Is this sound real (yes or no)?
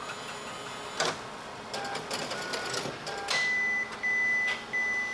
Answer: yes